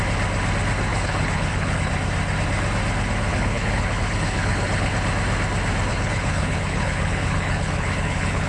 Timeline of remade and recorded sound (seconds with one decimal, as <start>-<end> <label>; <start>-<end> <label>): 0.0-0.9 recorded; 0.9-1.9 remade; 1.9-3.3 recorded; 3.3-4.9 remade; 4.9-5.9 recorded; 5.9-8.5 remade